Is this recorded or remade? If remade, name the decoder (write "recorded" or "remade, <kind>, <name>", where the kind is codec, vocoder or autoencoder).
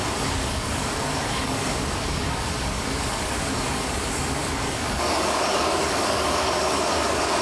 remade, codec, DAC